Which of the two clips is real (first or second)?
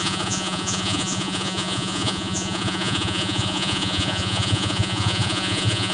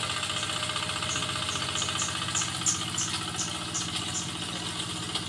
second